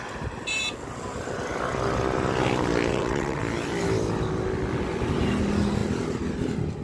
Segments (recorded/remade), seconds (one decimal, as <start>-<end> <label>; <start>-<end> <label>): 0.0-2.9 recorded; 2.9-3.4 remade; 3.4-6.8 recorded